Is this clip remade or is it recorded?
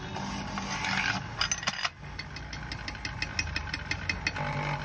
recorded